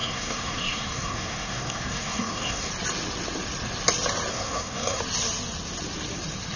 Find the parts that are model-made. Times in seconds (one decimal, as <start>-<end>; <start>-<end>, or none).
0.0-2.7; 4.3-5.0